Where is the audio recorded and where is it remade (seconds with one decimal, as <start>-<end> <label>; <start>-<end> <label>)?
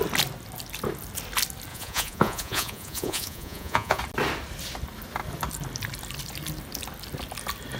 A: 0.0-1.7 recorded; 1.7-4.0 remade; 4.0-7.8 recorded